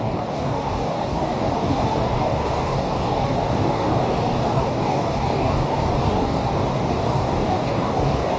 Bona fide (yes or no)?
no